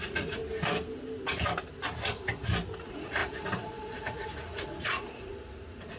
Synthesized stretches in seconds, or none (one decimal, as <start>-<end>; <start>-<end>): 0.0-0.4; 2.8-6.0